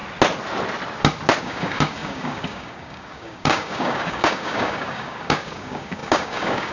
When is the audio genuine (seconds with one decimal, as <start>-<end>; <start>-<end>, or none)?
0.0-1.4